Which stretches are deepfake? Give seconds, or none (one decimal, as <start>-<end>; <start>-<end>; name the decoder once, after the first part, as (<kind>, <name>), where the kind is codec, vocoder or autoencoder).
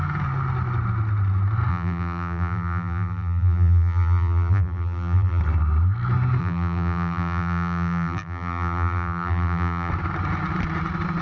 1.7-5.4 (vocoder, BigVGAN v2); 6.4-9.9